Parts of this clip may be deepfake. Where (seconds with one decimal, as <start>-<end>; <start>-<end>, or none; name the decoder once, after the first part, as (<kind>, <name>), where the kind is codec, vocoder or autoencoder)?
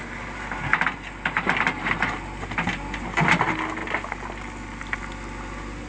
none